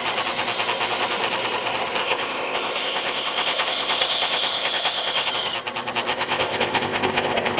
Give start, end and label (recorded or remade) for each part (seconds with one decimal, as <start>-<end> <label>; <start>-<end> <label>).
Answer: 0.0-2.0 recorded; 2.0-5.3 remade; 5.3-6.1 recorded; 6.1-7.6 remade

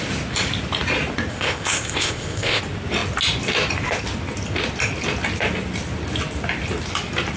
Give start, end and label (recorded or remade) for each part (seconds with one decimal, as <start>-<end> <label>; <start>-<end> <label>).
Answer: 0.0-1.3 recorded; 1.3-2.6 remade; 2.6-7.4 recorded

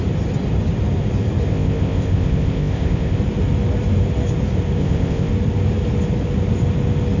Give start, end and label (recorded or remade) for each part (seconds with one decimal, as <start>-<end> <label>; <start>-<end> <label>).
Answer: 0.0-1.5 recorded; 1.5-3.2 remade; 3.2-4.8 recorded; 4.8-5.3 remade; 5.3-7.2 recorded

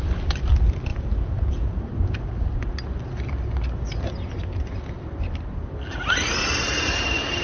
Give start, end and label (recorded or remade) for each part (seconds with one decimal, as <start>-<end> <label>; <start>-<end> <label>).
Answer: 0.0-7.4 recorded

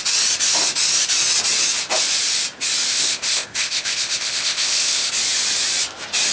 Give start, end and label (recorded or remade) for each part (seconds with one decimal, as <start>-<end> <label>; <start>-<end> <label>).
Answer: 0.0-2.9 recorded; 2.9-5.1 remade; 5.1-6.3 recorded